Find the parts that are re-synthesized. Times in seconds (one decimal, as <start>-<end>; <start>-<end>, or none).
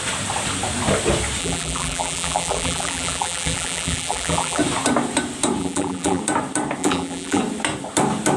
1.4-4.6; 5.6-6.2; 6.8-7.4